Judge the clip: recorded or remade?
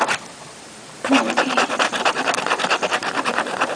remade